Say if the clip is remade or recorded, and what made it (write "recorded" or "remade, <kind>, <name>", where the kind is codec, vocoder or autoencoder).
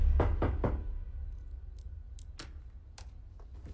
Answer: recorded